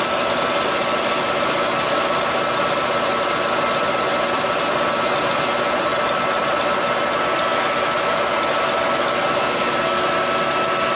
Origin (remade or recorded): recorded